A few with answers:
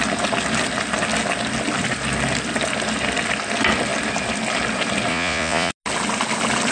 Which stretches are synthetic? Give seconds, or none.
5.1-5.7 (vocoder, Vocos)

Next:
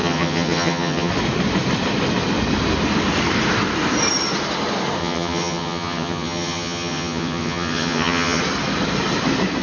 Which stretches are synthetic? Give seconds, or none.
0.0-1.1 (vocoder, HiFi-GAN); 5.0-8.4

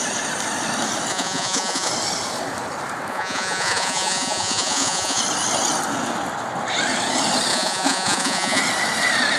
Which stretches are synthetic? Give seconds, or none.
1.1-1.9 (vocoder, Vocos); 3.1-5.2; 7.5-8.6

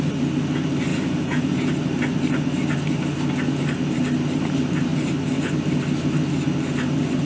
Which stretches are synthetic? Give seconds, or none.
0.9-1.7 (vocoder, Vocos)

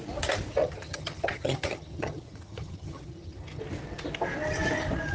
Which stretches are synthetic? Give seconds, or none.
0.6-3.6 (vocoder, HiFi-GAN)

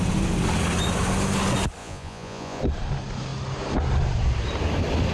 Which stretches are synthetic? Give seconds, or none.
1.8-2.6 (vocoder, Vocos)